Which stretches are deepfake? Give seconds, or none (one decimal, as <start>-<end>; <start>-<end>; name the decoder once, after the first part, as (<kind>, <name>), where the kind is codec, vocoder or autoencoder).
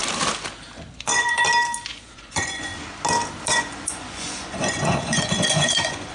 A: 0.9-1.4 (vocoder, Vocos); 1.9-2.7; 3.5-6.1